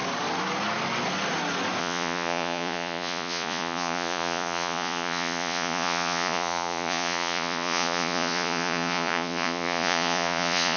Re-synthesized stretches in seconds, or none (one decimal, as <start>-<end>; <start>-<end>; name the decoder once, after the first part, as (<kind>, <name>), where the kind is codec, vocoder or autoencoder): 1.8-10.8 (vocoder, Vocos)